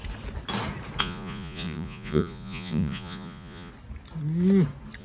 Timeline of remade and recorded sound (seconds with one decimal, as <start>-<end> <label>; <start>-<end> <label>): 0.0-1.0 recorded; 1.0-3.7 remade; 3.7-5.0 recorded